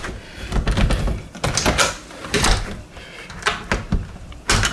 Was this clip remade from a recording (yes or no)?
no